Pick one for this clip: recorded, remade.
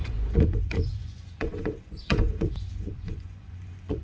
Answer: remade